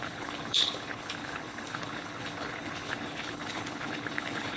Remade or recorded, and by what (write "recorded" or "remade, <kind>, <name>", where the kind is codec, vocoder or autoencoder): remade, codec, HILCodec